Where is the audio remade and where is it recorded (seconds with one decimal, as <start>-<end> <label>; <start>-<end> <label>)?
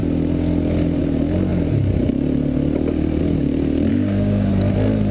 0.0-3.9 recorded; 3.9-4.5 remade; 4.5-5.1 recorded